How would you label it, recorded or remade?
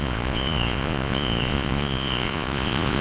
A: remade